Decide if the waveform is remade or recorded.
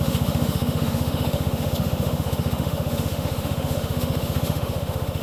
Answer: remade